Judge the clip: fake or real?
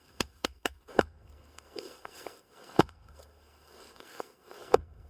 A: fake